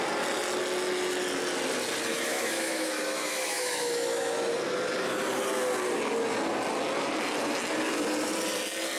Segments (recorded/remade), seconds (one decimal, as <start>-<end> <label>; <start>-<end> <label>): 0.0-2.1 recorded; 2.1-4.3 remade; 4.3-9.0 recorded